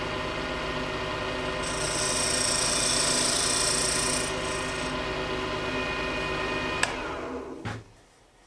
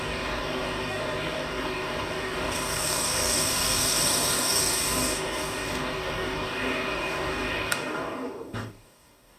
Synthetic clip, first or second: second